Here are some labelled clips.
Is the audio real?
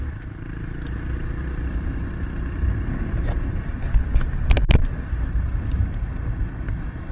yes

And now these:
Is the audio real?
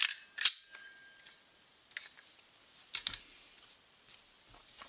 yes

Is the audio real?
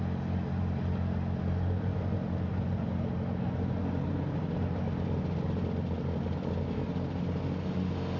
yes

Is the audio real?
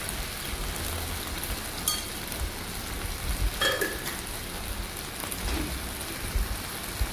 yes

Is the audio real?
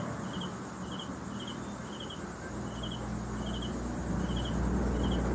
yes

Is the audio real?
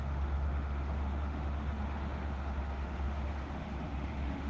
no